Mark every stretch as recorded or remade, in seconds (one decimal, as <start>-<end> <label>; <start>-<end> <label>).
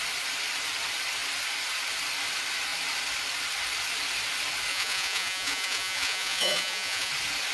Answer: 0.0-4.7 recorded; 4.7-7.1 remade; 7.1-7.5 recorded